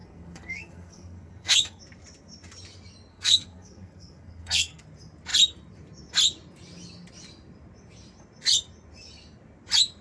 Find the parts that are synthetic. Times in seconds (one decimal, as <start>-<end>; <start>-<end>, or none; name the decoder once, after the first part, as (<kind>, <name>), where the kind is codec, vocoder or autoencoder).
0.0-1.8 (codec, SNAC); 3.1-4.8